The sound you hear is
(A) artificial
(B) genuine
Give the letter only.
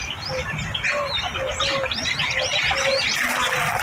B